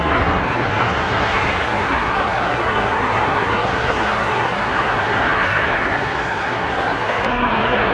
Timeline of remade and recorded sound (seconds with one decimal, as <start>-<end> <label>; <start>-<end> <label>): 0.0-7.9 remade